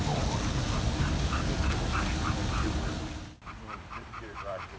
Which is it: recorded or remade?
recorded